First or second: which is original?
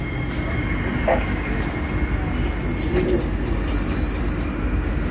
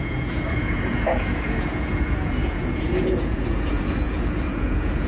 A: first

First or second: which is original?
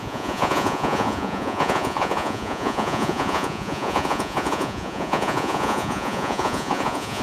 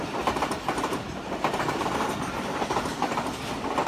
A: second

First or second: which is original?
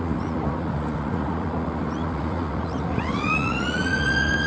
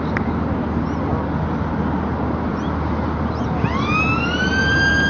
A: second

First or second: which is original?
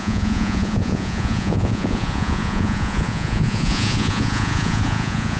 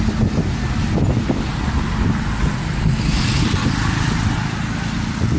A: second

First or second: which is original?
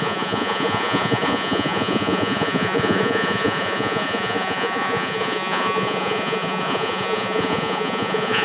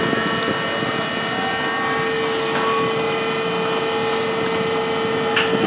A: second